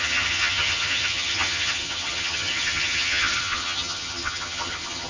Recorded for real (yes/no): no